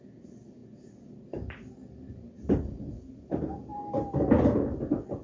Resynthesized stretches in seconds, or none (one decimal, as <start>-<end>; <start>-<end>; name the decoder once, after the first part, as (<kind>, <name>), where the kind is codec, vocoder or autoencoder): none